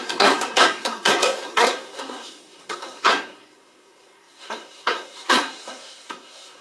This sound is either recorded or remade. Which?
remade